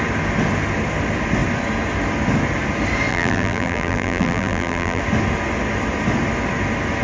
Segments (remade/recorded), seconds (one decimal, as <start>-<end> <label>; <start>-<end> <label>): 0.0-3.1 recorded; 3.1-5.0 remade; 5.0-7.0 recorded